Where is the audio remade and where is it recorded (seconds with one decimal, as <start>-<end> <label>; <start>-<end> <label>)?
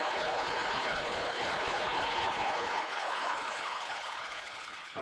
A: 0.0-5.0 remade